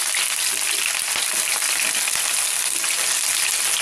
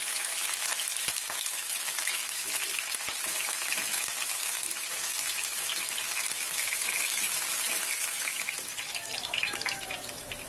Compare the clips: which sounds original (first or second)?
first